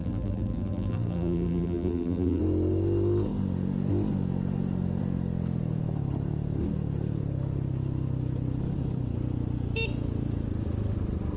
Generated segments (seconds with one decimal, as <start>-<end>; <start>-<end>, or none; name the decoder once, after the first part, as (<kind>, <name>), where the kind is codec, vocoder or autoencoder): 0.0-2.4 (vocoder, BigVGAN v2)